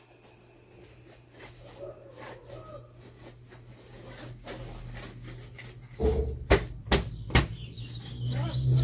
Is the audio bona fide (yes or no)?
yes